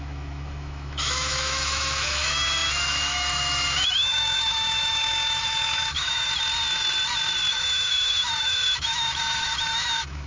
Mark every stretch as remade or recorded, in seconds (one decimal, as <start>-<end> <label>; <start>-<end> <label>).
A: 0.0-6.3 remade; 6.3-7.5 recorded; 7.5-10.3 remade